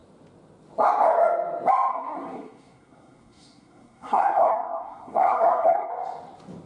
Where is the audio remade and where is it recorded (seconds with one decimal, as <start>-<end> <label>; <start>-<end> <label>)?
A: 0.0-1.9 recorded; 1.9-5.9 remade; 5.9-6.7 recorded